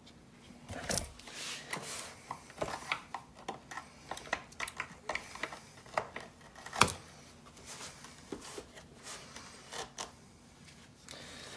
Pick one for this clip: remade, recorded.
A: recorded